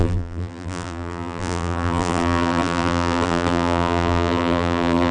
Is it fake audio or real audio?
fake